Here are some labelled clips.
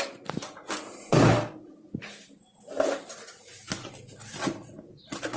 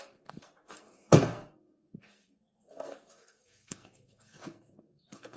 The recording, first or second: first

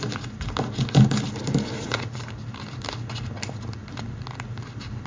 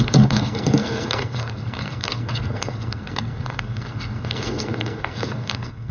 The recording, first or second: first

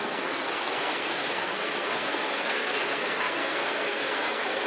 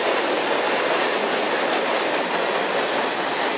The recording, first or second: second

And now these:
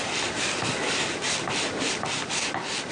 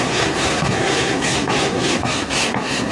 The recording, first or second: first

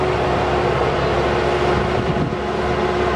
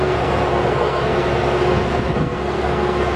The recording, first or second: first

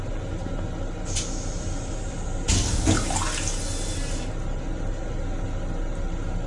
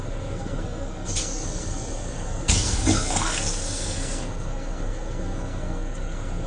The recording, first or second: first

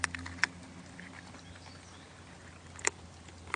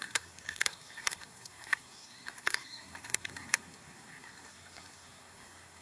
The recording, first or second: first